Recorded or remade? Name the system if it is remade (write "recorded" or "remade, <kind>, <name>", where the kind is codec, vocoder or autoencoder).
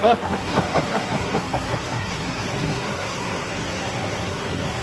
remade, codec, SNAC